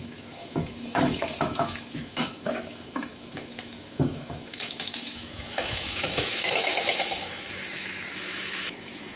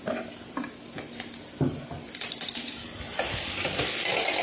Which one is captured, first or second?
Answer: second